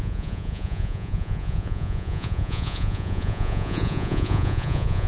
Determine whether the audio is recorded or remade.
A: remade